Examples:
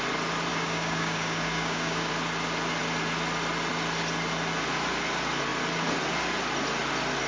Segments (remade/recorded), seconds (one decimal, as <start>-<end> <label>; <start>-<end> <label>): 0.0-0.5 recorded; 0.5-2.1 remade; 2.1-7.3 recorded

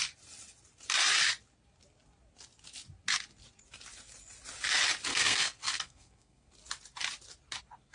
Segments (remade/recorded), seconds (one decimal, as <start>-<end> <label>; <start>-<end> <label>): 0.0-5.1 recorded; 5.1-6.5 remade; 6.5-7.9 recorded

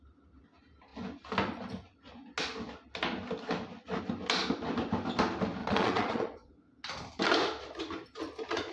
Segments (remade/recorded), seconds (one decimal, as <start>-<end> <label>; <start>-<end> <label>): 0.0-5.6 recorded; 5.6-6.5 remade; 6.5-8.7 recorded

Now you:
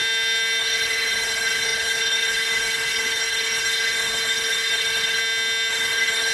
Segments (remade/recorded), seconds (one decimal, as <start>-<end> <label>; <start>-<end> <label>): 0.0-0.6 recorded; 0.6-5.2 remade; 5.2-5.7 recorded; 5.7-6.3 remade